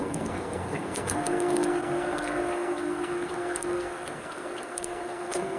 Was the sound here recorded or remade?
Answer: remade